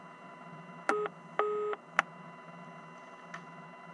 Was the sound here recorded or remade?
recorded